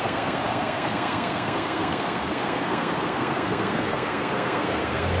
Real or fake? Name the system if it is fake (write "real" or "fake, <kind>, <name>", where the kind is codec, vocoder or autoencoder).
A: fake, codec, SNAC